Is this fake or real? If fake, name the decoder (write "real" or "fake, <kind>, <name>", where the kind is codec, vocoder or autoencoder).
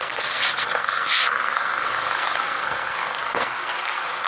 fake, codec, SNAC